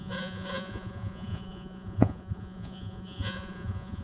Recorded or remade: remade